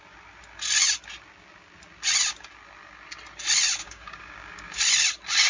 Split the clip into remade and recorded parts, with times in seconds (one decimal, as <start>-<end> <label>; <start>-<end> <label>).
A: 0.0-3.8 recorded; 3.8-4.8 remade; 4.8-5.5 recorded